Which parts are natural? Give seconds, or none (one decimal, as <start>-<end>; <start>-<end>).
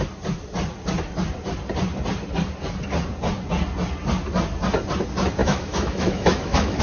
0.0-5.4